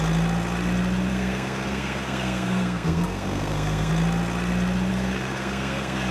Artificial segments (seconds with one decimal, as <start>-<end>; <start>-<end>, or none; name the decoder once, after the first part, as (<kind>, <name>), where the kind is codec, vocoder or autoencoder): 1.1-3.9 (codec, SNAC); 4.9-6.1